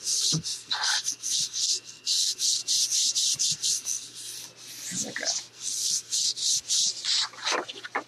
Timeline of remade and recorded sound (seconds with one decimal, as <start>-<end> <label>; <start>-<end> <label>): 0.0-2.6 remade; 2.6-3.4 recorded; 3.4-4.4 remade; 4.4-5.5 recorded; 5.5-6.4 remade; 6.4-8.1 recorded